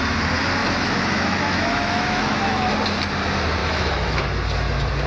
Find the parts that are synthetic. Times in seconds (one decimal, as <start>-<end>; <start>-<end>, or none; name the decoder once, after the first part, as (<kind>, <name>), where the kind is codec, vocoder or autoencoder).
0.6-2.7 (autoencoder, DAC-VAE); 3.6-4.2